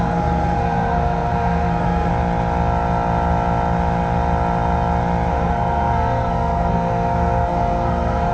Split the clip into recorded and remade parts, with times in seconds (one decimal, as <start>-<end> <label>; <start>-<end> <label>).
0.0-2.1 remade; 2.1-5.3 recorded; 5.3-8.3 remade